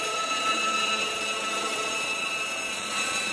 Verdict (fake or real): fake